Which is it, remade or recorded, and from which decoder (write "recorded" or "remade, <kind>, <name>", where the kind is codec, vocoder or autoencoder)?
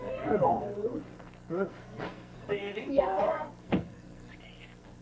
remade, codec, SNAC